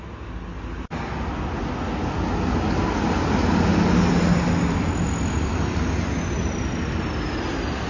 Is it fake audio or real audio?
real